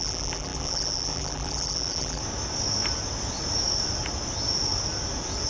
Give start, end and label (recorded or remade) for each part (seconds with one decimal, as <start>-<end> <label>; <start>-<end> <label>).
0.0-2.2 remade; 2.2-5.5 recorded